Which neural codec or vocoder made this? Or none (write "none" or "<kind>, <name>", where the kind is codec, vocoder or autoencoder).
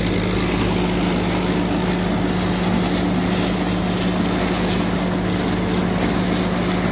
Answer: none